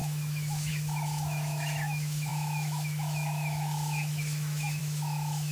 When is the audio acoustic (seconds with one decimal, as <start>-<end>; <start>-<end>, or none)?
none